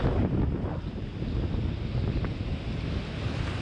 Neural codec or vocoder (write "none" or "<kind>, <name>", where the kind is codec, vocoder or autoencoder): none